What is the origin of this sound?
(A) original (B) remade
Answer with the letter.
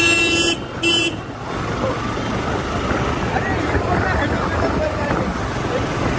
A